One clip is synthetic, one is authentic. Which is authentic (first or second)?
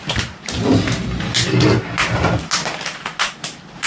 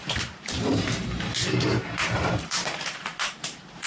first